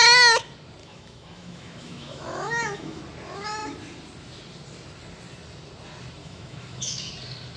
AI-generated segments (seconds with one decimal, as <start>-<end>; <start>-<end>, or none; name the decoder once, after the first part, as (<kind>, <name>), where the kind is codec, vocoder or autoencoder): 0.8-3.0 (autoencoder, DAC-VAE); 6.2-7.1